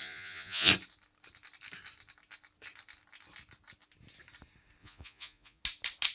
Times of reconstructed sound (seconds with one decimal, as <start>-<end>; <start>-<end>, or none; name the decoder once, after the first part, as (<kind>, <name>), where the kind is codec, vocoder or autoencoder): 0.0-0.7 (vocoder, Vocos); 4.8-5.6